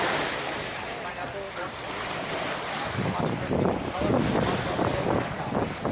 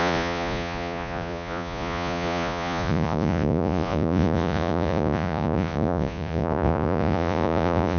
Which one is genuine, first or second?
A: first